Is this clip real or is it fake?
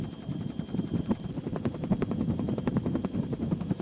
fake